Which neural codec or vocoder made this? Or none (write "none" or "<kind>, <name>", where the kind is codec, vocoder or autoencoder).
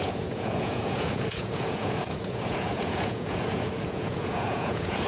vocoder, Vocos